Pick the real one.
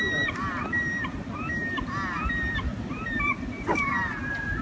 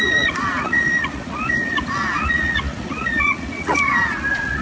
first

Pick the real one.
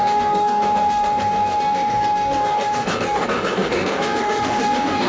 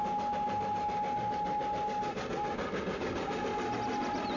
second